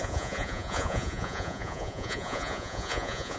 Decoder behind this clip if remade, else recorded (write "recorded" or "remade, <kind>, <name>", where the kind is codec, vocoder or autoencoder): remade, vocoder, Vocos